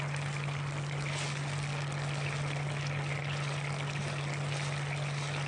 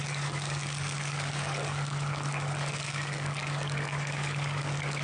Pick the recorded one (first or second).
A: first